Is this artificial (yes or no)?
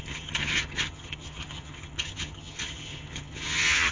yes